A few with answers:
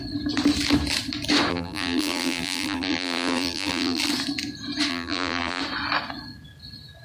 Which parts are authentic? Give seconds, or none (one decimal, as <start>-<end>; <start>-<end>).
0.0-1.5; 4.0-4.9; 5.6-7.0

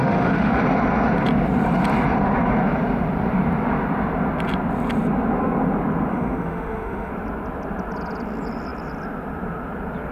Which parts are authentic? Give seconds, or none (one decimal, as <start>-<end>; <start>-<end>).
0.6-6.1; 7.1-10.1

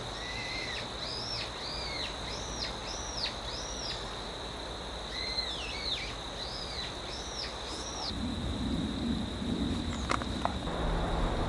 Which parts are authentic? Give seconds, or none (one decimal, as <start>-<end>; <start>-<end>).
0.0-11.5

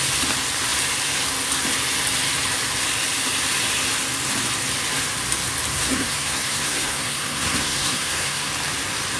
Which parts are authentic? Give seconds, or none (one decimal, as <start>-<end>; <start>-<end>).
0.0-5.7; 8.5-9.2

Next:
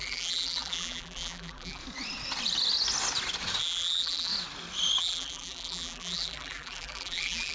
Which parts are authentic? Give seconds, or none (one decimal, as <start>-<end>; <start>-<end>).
1.8-3.6; 4.3-5.0